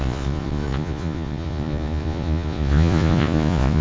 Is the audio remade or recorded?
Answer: remade